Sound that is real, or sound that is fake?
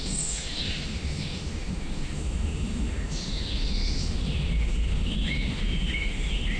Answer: fake